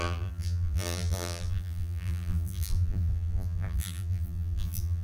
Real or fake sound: fake